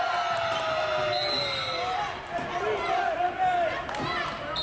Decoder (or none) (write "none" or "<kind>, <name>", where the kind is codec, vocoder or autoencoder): none